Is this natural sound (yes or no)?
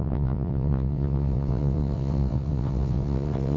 no